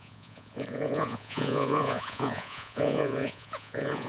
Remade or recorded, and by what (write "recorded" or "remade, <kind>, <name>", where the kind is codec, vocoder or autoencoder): remade, vocoder, Vocos